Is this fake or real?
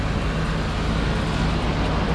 real